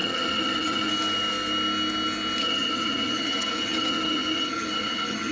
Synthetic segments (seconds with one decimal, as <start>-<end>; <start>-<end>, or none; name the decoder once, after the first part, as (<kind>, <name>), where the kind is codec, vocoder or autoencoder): 0.0-0.9 (vocoder, HiFi-GAN); 2.4-5.3